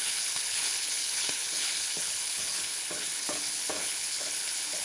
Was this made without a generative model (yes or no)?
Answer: no